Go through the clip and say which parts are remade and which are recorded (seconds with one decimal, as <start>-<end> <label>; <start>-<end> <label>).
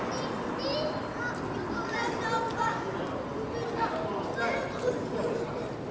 0.0-5.9 recorded